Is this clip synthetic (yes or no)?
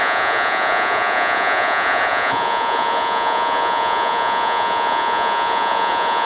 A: yes